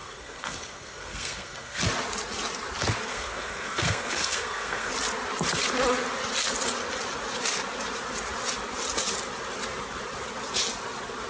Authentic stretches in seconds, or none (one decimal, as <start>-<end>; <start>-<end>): 1.8-3.1; 4.9-11.3